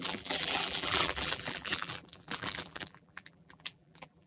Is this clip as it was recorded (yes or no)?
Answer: no